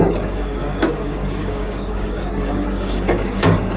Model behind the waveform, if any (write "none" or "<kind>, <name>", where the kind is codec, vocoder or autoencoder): codec, DAC